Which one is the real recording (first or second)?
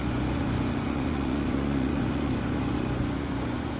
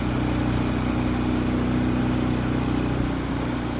second